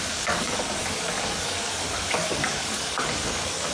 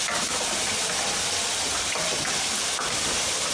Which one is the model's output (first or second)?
first